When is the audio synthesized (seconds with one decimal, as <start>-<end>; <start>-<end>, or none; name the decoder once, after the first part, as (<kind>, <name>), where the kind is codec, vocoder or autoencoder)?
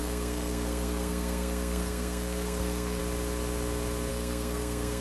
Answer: 0.0-3.0 (codec, SNAC); 4.1-5.0